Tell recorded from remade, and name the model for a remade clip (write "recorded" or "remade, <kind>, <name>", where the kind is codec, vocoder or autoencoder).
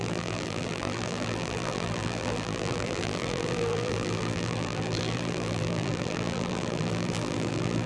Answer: remade, vocoder, BigVGAN v2